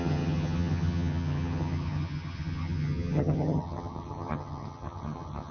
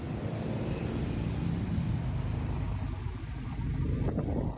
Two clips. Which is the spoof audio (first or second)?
first